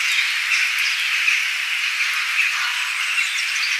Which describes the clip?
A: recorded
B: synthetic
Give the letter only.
A